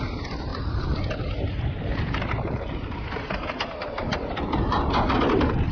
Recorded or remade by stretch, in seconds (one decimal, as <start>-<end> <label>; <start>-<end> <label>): 0.0-0.5 recorded; 0.5-1.1 remade; 1.1-1.9 recorded; 1.9-4.9 remade; 4.9-5.7 recorded